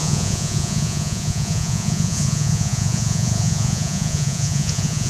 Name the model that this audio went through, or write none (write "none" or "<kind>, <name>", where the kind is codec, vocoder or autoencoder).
vocoder, Vocos